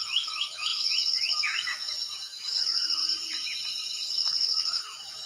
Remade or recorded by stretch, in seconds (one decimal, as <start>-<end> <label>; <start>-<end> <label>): 0.0-3.0 remade; 3.0-4.1 recorded; 4.1-5.3 remade